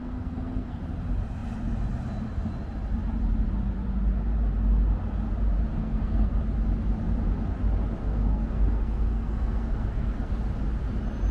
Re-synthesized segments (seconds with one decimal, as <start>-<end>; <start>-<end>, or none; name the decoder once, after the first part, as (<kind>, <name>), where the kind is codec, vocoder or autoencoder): 0.0-0.8 (codec, SNAC); 5.7-6.4; 8.0-10.3